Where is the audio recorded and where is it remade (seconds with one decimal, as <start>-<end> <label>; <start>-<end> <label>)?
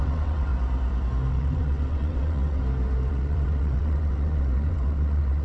0.0-0.5 remade; 0.5-1.3 recorded; 1.3-2.6 remade; 2.6-3.1 recorded; 3.1-5.4 remade